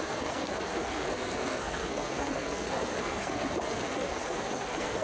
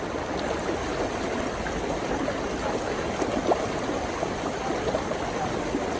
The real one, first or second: second